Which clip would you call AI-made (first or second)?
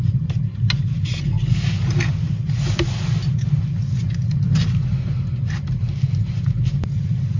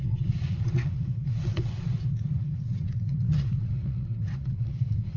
second